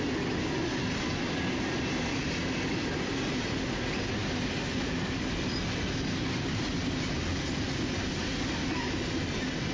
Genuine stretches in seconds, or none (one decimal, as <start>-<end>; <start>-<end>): 0.0-9.7